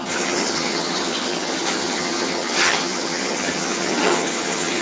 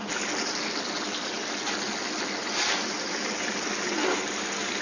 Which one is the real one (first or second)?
second